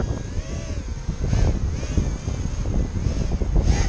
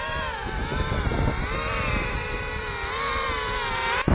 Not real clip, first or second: second